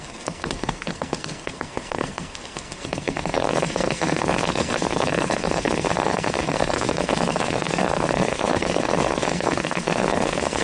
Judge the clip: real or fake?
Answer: fake